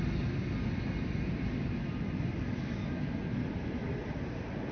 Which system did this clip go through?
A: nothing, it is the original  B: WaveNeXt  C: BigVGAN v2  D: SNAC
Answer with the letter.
A